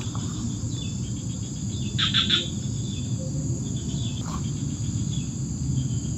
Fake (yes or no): no